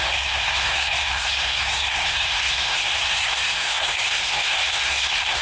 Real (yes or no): no